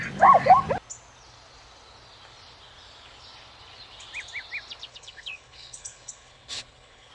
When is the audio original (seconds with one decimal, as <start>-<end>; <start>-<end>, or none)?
0.0-4.9